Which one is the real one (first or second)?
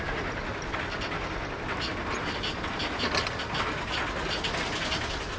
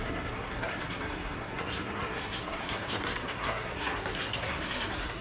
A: first